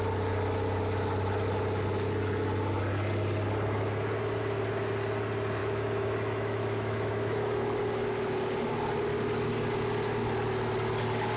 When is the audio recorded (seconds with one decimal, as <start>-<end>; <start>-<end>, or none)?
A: 0.0-5.6; 7.8-11.4